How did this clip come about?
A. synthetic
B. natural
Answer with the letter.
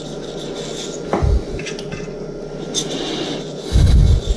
B